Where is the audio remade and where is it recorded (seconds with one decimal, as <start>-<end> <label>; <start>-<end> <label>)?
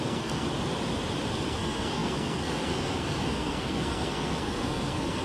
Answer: 0.0-0.5 remade; 0.5-1.3 recorded; 1.3-5.2 remade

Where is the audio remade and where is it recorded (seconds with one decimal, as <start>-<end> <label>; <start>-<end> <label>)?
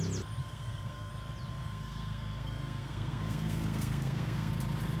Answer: 0.0-0.4 recorded; 0.4-1.1 remade; 1.1-1.5 recorded; 1.5-4.5 remade; 4.5-5.0 recorded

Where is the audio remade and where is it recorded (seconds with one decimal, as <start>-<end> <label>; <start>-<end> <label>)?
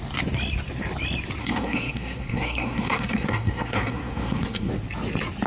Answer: 0.0-1.4 recorded; 1.4-4.7 remade; 4.7-5.5 recorded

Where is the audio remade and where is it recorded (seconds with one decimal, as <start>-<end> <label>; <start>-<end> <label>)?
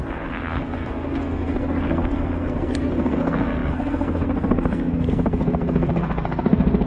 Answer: 0.0-6.9 remade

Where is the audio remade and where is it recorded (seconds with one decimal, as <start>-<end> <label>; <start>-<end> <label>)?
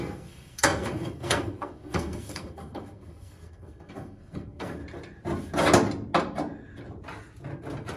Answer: 0.0-4.8 remade; 4.8-8.0 recorded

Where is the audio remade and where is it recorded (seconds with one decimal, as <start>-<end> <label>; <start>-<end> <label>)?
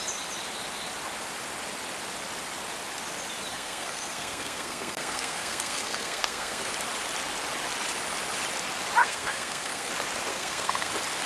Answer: 0.0-3.5 recorded; 3.5-6.7 remade; 6.7-9.0 recorded; 9.0-9.9 remade; 9.9-10.3 recorded; 10.3-10.9 remade; 10.9-11.3 recorded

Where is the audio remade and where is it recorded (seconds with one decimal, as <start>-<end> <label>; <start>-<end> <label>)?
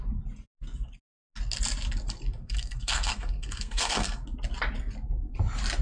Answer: 0.0-2.4 recorded; 2.4-4.2 remade; 4.2-5.8 recorded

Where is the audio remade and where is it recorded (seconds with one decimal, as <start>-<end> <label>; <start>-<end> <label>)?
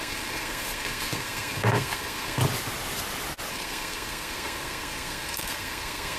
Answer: 0.0-2.4 remade; 2.4-3.5 recorded; 3.5-6.2 remade